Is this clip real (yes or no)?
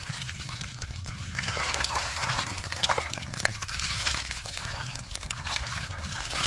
no